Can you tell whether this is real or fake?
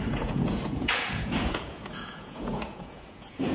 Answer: fake